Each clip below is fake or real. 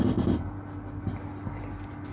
real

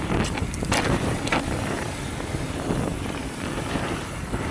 real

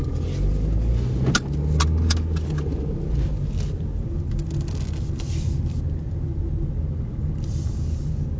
real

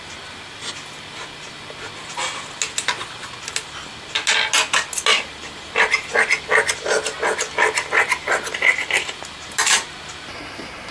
real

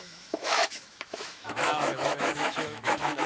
fake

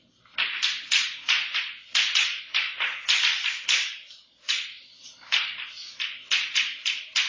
real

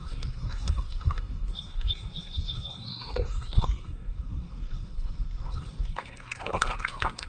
fake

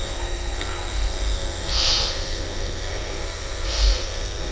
fake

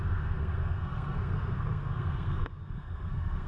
fake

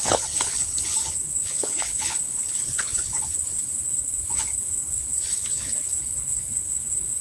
fake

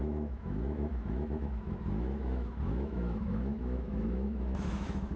fake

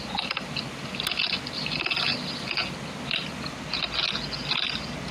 real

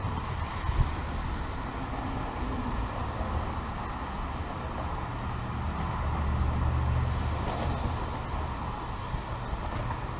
real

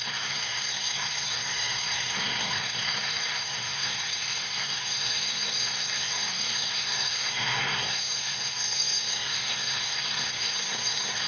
fake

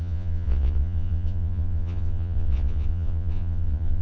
fake